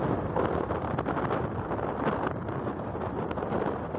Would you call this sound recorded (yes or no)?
yes